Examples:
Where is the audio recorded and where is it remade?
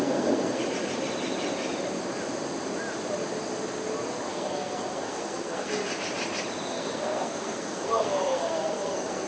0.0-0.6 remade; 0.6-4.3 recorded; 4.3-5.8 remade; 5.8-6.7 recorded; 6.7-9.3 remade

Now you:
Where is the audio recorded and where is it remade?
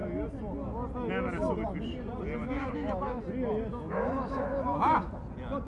0.0-2.4 recorded; 2.4-3.2 remade; 3.2-3.7 recorded; 3.7-5.1 remade; 5.1-5.7 recorded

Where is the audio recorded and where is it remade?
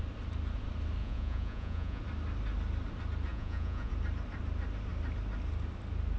0.0-1.0 recorded; 1.0-2.0 remade; 2.0-3.3 recorded; 3.3-3.9 remade; 3.9-6.2 recorded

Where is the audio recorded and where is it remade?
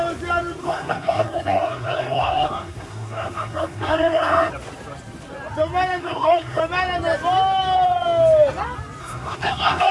0.0-0.6 recorded; 0.6-4.5 remade; 4.5-6.0 recorded; 6.0-6.6 remade; 6.6-9.0 recorded; 9.0-9.9 remade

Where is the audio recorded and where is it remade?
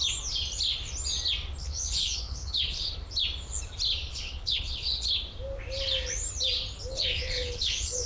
0.0-1.6 recorded; 1.6-2.9 remade; 2.9-4.1 recorded; 4.1-5.2 remade; 5.2-6.9 recorded; 6.9-8.1 remade